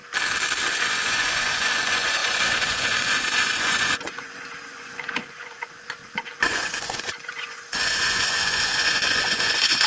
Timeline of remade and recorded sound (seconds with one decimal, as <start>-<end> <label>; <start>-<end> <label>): 0.0-0.7 recorded; 0.7-9.9 remade